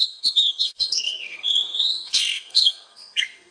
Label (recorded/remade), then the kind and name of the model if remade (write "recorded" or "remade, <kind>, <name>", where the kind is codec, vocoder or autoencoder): remade, codec, SNAC